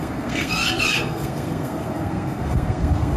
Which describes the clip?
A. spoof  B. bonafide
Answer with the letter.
A